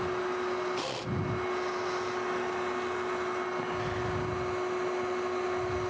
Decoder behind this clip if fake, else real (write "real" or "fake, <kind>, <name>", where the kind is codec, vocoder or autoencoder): real